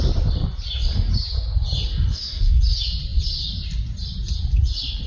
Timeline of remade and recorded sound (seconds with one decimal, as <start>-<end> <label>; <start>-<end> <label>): 0.0-2.1 recorded; 2.1-2.6 remade; 2.6-5.1 recorded